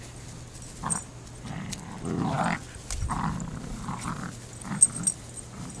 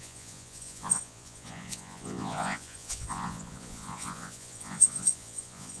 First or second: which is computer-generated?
second